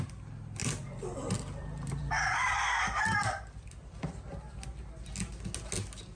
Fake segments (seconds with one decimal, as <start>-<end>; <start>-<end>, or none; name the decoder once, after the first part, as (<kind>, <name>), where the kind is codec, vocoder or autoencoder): 0.6-4.3 (vocoder, BigVGAN v2)